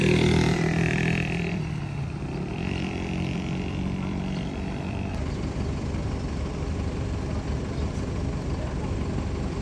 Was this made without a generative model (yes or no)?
no